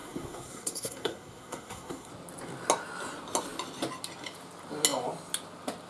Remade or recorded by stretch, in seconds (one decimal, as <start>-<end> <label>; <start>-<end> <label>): 0.0-2.1 remade; 2.1-5.9 recorded